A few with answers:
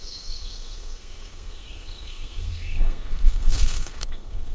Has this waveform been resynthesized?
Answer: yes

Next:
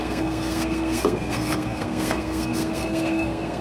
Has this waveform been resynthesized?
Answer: yes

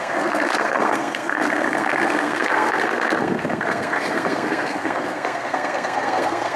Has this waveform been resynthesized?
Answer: yes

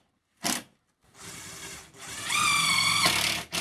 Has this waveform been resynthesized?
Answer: no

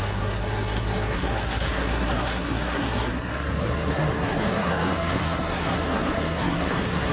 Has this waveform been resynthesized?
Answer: yes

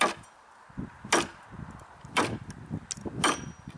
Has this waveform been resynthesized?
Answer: no